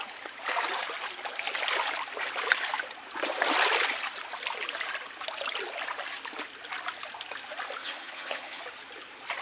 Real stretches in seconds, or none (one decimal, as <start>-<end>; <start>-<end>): 0.0-7.8; 8.6-9.4